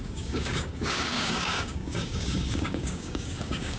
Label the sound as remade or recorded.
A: remade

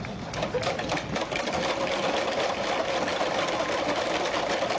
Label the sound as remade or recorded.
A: recorded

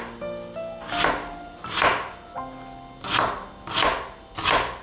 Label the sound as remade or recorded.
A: recorded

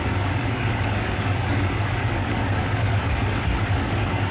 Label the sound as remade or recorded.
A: remade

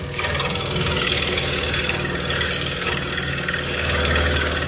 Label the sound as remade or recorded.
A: remade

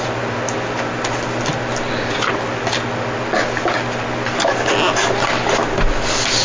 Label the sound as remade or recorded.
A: recorded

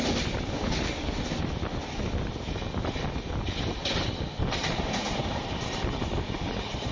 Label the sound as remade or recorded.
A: recorded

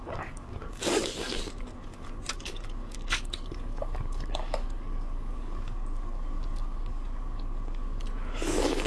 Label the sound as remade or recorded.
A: remade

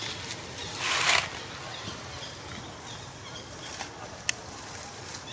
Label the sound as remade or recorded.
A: recorded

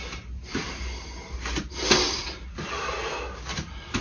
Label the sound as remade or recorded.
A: recorded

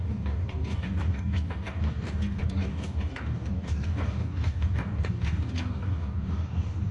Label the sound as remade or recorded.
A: remade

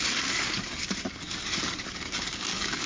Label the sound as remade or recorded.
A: remade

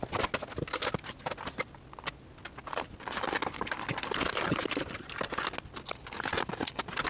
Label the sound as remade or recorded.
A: recorded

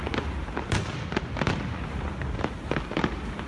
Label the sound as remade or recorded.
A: recorded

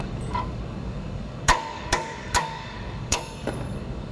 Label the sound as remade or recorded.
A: remade